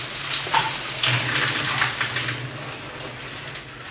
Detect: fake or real real